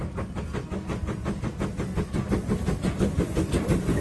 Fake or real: real